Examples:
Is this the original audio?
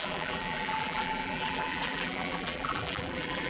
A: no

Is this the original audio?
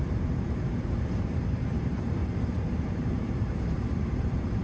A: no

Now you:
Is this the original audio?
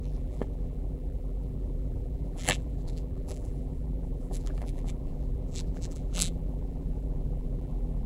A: no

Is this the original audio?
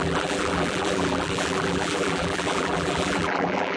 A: no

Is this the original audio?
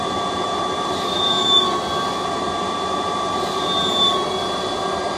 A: yes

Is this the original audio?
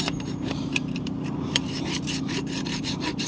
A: no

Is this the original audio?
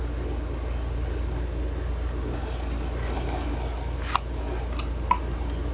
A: yes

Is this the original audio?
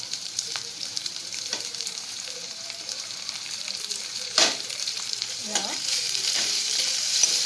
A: no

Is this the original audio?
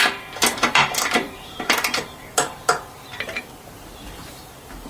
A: no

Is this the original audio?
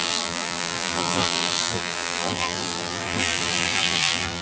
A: no